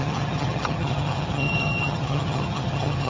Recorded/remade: remade